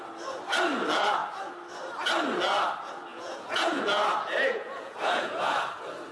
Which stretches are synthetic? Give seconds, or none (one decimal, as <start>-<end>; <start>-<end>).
3.1-3.8; 4.5-5.6

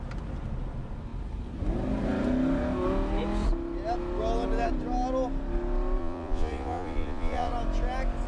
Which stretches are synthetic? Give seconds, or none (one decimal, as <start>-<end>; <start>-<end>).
6.0-7.5

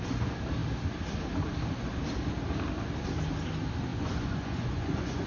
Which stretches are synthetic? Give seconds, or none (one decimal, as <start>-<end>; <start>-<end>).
3.9-5.3

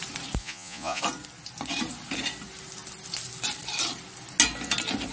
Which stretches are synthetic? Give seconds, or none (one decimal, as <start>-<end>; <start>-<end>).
0.4-1.0

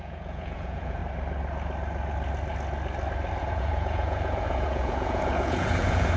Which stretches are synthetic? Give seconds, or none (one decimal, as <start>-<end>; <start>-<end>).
0.0-1.0; 3.4-6.2